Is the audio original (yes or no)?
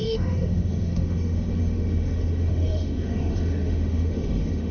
no